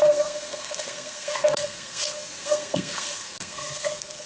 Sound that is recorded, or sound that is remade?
remade